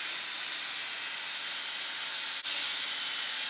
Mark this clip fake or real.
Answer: real